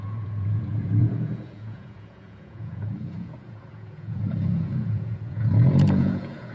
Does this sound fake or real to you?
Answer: fake